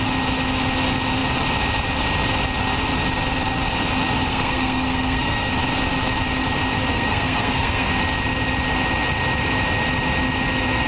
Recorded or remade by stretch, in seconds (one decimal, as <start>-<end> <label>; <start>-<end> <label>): 0.0-4.3 recorded; 4.3-5.5 remade; 5.5-6.9 recorded; 6.9-7.9 remade; 7.9-10.9 recorded